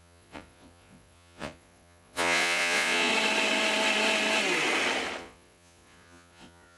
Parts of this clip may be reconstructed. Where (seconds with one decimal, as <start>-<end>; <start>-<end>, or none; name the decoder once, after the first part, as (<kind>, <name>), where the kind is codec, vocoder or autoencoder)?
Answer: 0.0-3.1 (vocoder, Vocos); 5.2-6.8